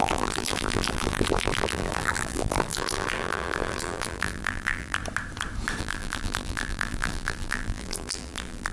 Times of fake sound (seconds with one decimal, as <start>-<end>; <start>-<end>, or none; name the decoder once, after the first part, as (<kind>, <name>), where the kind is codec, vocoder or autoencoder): 0.0-5.0 (vocoder, BigVGAN v2); 5.8-8.7